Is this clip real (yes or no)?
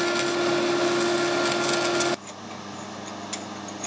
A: yes